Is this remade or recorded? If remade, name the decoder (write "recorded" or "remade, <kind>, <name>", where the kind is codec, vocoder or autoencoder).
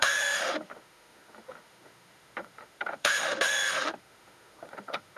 remade, autoencoder, DAC-VAE